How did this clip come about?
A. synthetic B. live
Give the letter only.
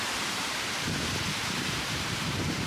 A